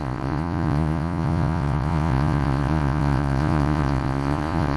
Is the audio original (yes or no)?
no